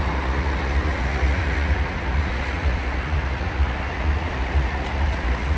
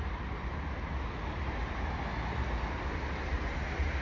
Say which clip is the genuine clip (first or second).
second